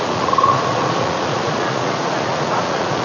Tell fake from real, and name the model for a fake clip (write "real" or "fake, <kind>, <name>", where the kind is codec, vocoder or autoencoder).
fake, vocoder, Vocos